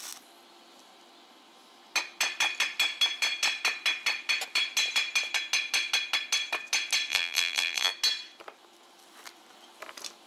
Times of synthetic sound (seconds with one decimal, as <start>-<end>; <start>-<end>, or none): 7.1-7.9